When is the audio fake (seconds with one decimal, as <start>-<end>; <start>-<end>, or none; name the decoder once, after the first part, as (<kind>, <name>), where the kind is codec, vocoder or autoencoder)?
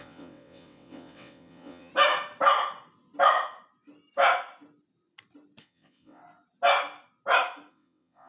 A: 0.0-1.9 (vocoder, WaveNeXt); 5.6-6.2; 7.7-8.3